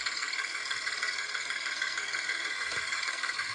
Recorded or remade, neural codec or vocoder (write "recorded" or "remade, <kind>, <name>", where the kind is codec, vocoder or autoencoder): remade, codec, SNAC